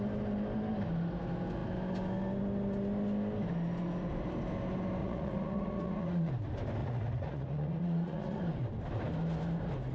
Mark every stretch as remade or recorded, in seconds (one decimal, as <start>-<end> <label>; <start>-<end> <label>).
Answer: 0.0-5.0 recorded; 5.0-6.3 remade; 6.3-6.8 recorded; 6.8-8.4 remade; 8.4-9.9 recorded